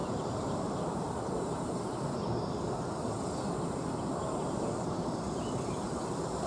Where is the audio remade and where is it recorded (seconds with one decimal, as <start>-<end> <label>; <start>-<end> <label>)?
0.0-1.8 remade; 1.8-6.5 recorded